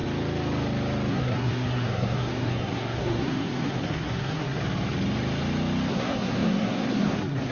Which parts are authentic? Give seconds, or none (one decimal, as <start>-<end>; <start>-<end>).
0.0-1.1; 4.6-5.9

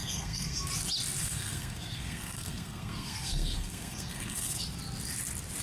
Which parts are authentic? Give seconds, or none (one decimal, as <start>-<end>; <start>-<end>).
0.7-1.2; 4.6-5.6

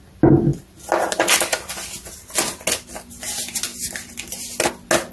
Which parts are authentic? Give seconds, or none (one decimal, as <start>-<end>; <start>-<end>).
0.0-5.1

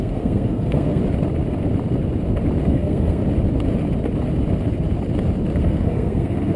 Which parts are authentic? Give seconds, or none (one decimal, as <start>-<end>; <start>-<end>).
1.0-2.7; 3.2-5.6

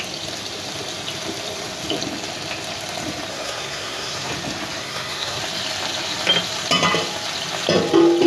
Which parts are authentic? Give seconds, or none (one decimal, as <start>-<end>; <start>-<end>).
0.0-3.3; 4.3-4.8; 5.4-8.3

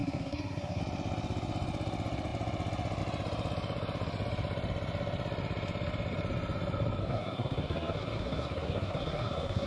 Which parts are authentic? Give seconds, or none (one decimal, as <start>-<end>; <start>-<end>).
0.8-7.0

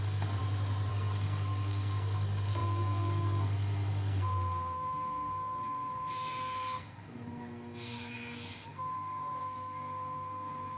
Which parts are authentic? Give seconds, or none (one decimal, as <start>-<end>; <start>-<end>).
0.4-0.9

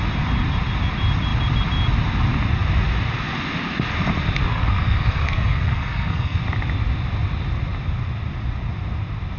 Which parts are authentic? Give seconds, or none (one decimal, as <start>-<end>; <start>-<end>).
0.0-4.5; 6.4-9.4